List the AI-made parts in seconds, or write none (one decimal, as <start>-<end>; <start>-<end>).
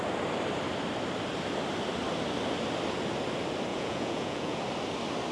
3.7-4.6